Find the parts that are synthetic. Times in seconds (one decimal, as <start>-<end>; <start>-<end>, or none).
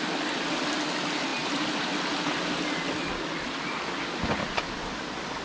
none